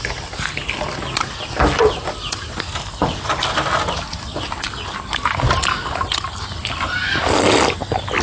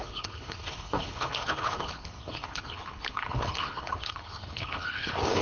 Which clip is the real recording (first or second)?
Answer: first